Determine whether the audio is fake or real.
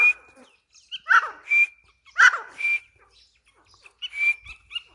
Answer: real